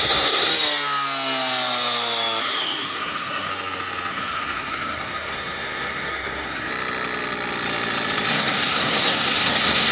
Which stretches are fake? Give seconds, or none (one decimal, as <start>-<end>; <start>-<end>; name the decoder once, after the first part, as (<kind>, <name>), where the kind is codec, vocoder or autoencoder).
0.0-0.5 (codec, SNAC); 2.4-3.5; 4.1-6.7; 8.3-9.9